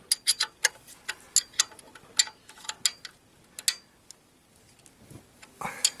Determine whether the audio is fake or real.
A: real